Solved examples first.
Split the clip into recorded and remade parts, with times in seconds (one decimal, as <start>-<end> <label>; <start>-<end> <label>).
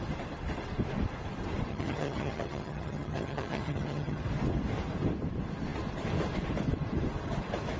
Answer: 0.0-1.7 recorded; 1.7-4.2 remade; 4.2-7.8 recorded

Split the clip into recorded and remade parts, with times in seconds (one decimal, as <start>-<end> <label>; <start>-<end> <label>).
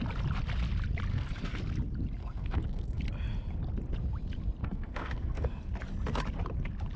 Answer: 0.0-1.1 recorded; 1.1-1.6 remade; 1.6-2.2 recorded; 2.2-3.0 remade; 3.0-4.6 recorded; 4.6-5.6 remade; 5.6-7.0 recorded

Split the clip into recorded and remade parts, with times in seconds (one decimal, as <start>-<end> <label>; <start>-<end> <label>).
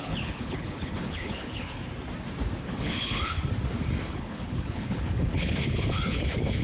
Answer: 0.0-1.8 remade; 1.8-2.6 recorded; 2.6-3.4 remade; 3.4-4.0 recorded; 4.0-6.6 remade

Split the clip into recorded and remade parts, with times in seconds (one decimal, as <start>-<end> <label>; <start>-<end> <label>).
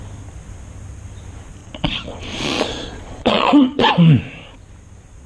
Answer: 0.0-1.6 recorded; 1.6-3.9 remade; 3.9-5.3 recorded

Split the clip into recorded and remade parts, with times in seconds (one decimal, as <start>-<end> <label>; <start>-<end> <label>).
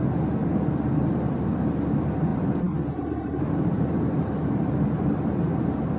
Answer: 0.0-0.4 recorded; 0.4-1.6 remade; 1.6-2.3 recorded; 2.3-6.0 remade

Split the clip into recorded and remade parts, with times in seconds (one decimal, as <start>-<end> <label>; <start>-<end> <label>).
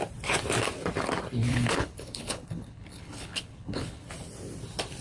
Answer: 0.0-1.5 recorded; 1.5-4.1 remade; 4.1-5.0 recorded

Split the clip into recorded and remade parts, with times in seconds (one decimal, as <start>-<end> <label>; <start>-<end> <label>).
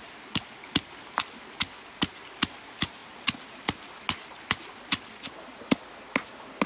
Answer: 0.0-6.7 recorded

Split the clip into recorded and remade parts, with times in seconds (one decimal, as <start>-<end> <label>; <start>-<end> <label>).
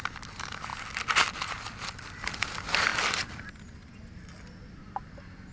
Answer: 0.0-5.5 recorded